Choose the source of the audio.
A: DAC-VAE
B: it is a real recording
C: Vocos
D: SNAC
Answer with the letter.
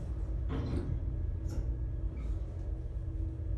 B